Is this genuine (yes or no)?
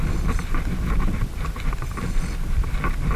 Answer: yes